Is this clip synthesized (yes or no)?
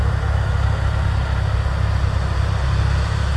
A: no